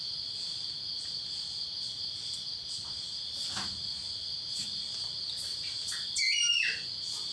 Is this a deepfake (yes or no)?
no